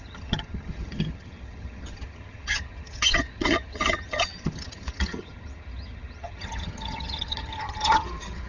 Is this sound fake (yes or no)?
yes